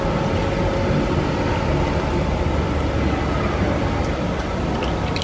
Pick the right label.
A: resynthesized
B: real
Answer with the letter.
B